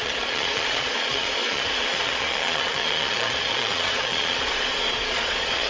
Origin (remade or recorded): remade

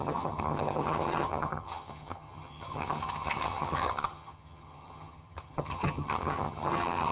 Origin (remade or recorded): remade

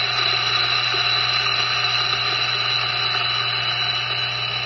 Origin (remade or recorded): recorded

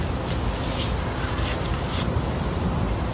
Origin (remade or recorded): recorded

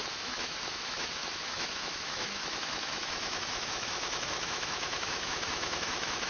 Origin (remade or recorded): remade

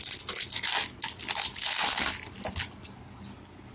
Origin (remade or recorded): recorded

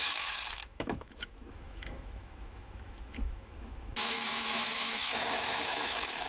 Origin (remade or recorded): remade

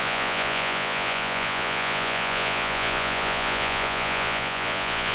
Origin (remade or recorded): remade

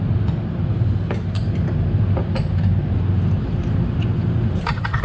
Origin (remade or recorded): recorded